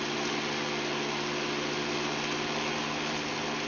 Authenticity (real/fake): real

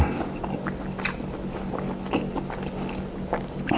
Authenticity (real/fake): real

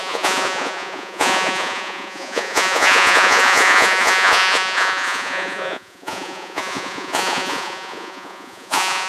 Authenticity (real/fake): fake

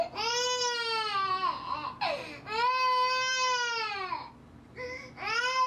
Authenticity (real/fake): real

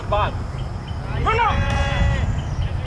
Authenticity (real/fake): real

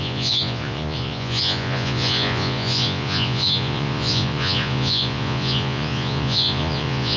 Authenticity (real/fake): fake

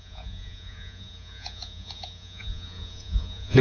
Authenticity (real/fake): fake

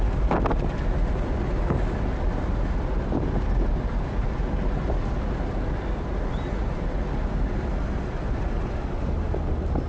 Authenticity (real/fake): real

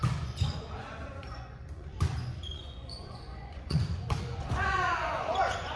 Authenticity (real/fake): fake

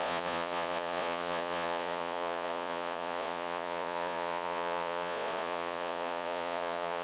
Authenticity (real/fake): fake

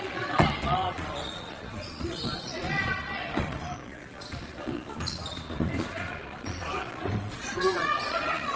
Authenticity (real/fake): fake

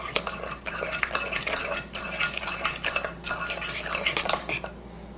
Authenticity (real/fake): real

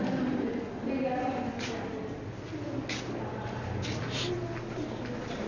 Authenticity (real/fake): real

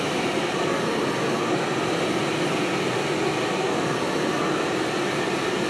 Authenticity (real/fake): real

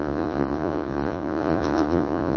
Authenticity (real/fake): fake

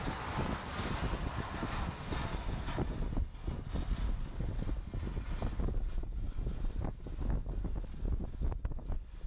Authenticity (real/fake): real